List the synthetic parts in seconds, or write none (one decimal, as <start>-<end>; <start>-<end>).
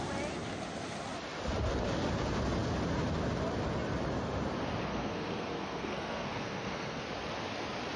4.9-7.0